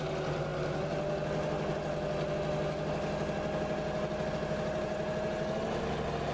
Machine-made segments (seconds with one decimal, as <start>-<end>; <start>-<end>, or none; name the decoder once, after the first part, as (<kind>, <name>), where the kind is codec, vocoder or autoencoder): none